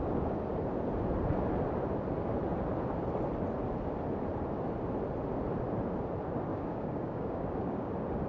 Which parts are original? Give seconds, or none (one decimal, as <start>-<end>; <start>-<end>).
0.0-6.5; 7.9-8.3